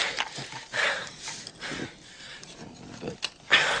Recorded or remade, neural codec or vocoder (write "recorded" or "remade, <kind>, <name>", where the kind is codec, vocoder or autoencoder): recorded